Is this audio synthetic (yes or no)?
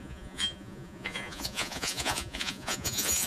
yes